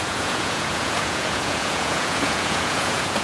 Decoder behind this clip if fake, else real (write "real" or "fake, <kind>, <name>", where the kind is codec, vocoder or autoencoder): fake, vocoder, Vocos